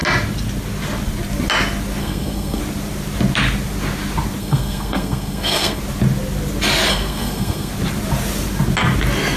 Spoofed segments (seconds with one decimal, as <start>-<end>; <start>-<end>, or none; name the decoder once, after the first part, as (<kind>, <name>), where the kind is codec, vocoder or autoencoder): 2.0-2.6 (codec, SNAC); 4.4-5.8; 6.9-7.7